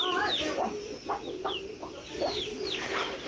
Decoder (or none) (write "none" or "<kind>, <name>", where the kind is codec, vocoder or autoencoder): none